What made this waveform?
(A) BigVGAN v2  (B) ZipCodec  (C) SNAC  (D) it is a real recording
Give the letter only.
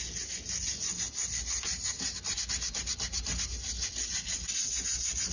D